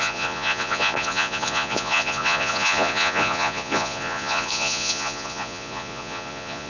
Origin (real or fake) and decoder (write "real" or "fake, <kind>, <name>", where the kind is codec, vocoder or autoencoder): fake, vocoder, Vocos